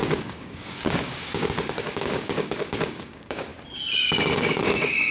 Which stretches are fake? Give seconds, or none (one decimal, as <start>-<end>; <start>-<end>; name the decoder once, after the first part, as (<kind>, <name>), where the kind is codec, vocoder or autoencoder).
0.0-3.5 (codec, DAC); 4.3-5.1